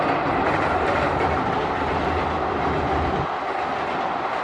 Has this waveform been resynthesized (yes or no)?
no